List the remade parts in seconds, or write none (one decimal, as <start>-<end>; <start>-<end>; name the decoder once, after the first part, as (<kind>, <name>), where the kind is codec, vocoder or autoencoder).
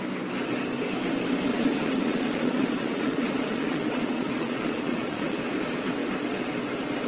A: 1.5-5.4 (vocoder, Vocos)